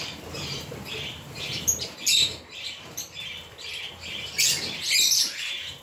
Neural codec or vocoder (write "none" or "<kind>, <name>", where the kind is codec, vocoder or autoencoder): vocoder, BigVGAN v2